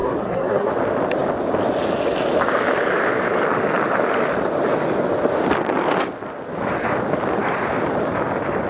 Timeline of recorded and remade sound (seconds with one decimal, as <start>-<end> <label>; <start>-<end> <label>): 0.0-0.7 remade; 0.7-8.7 recorded

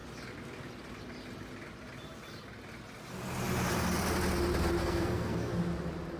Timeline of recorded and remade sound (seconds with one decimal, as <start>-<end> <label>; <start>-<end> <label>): 0.0-4.8 recorded; 4.8-5.5 remade; 5.5-6.2 recorded

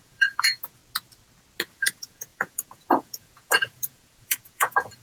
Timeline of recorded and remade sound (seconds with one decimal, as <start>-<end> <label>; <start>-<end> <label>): 0.0-0.8 remade; 0.8-1.7 recorded; 1.7-5.0 remade

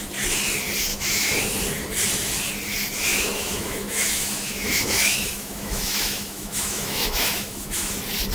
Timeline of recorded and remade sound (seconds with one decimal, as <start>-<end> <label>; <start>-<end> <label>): 0.0-0.9 recorded; 0.9-1.4 remade; 1.4-3.1 recorded; 3.1-7.9 remade; 7.9-8.3 recorded

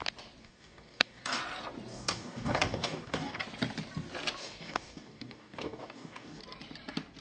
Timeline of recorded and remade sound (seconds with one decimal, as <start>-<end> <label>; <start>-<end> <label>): 0.0-0.4 recorded; 0.4-1.4 remade; 1.4-1.9 recorded; 1.9-3.4 remade; 3.4-4.4 recorded; 4.4-6.4 remade; 6.4-7.2 recorded

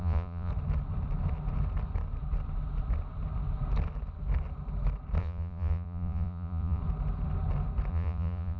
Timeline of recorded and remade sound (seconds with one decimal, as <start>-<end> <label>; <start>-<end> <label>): 0.0-0.5 remade; 0.5-5.2 recorded; 5.2-6.8 remade; 6.8-7.9 recorded; 7.9-8.6 remade

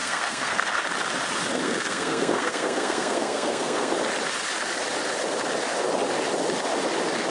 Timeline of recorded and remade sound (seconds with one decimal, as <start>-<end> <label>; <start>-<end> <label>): 0.0-0.7 remade; 0.7-1.5 recorded; 1.5-3.9 remade; 3.9-7.3 recorded